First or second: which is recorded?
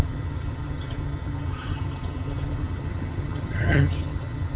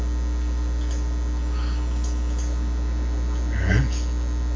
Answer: second